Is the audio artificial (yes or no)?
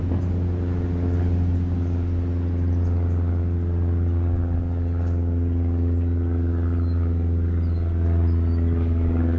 no